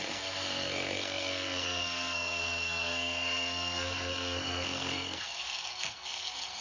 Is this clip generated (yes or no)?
yes